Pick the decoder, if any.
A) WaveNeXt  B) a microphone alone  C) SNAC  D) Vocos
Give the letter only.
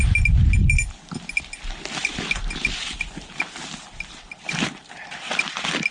B